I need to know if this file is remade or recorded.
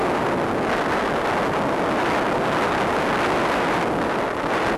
recorded